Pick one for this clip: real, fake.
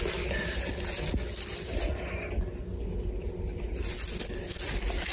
real